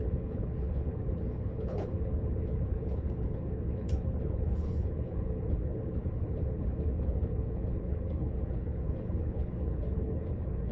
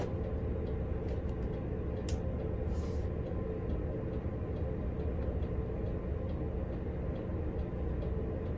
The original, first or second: second